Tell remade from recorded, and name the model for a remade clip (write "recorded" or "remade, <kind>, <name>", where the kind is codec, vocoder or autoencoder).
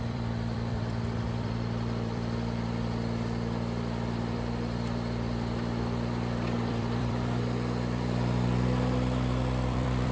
remade, vocoder, BigVGAN v2